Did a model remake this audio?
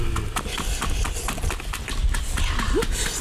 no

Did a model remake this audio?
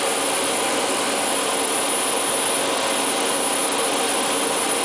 no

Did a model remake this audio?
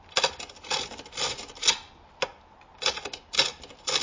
no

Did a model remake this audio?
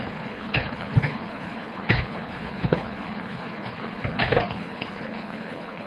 yes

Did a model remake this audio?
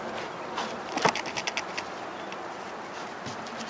no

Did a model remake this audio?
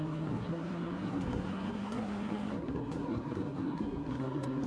yes